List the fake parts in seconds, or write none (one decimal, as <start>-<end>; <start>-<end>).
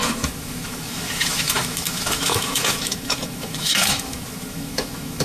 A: 0.0-5.2